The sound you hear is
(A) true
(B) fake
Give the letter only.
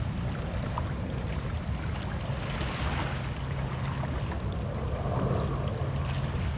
A